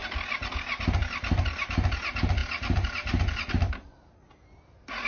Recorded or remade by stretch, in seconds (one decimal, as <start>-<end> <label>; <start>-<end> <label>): 0.0-5.1 recorded